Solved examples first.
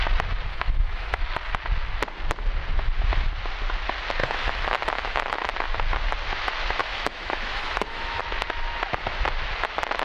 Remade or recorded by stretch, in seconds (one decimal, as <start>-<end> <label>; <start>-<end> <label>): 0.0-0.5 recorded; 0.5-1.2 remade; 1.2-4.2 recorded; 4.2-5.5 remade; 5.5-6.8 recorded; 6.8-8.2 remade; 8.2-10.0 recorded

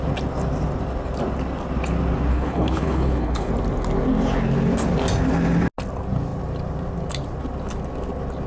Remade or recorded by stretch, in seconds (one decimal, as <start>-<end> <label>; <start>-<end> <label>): 0.0-2.3 recorded; 2.3-3.5 remade; 3.5-8.5 recorded

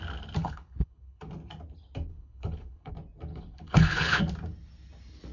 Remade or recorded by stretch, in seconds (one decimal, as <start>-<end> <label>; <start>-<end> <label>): 0.0-0.4 recorded; 0.4-1.3 remade; 1.3-2.1 recorded; 2.1-2.9 remade; 2.9-3.3 recorded; 3.3-4.2 remade; 4.2-5.3 recorded

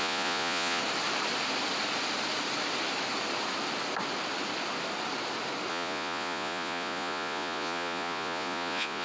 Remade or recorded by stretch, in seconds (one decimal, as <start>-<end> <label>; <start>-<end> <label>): 0.0-0.8 remade; 0.8-5.7 recorded; 5.7-9.0 remade